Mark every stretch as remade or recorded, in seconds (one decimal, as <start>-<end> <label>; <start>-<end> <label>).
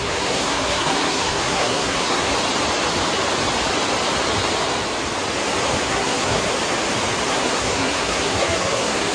0.0-2.3 remade; 2.3-5.8 recorded; 5.8-6.4 remade; 6.4-7.3 recorded; 7.3-9.1 remade